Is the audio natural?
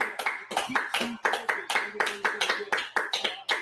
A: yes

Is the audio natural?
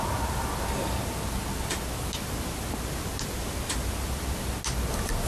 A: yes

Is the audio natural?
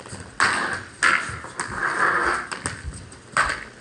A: yes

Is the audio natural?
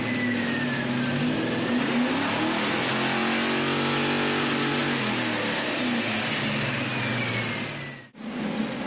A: yes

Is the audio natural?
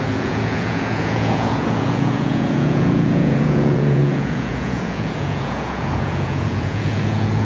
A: no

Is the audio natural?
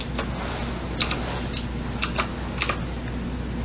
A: yes